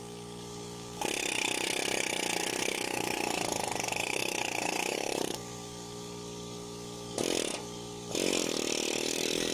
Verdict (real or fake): fake